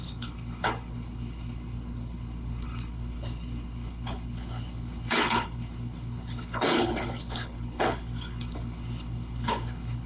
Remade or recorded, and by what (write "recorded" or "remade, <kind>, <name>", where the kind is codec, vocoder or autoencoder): remade, codec, HILCodec